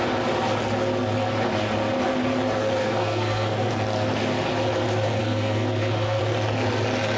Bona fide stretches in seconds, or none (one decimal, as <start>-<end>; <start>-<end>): 0.0-2.8; 3.7-5.2; 6.2-7.2